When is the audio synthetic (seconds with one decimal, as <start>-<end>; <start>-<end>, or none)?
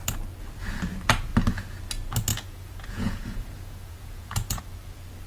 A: 2.3-4.6